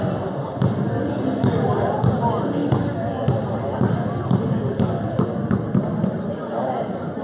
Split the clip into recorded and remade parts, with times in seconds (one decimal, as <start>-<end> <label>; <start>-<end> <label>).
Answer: 0.0-7.2 recorded